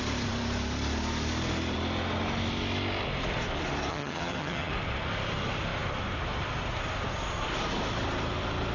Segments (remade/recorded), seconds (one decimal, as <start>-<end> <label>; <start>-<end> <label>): 0.0-3.9 recorded; 3.9-4.7 remade; 4.7-8.7 recorded